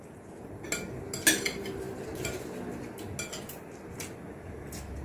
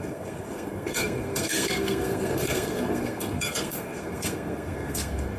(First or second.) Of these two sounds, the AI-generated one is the second